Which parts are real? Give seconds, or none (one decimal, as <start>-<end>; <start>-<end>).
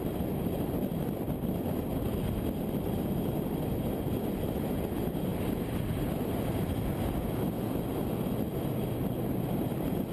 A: 0.0-10.1